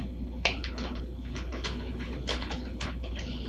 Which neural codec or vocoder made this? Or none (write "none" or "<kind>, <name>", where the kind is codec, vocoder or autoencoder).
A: codec, HILCodec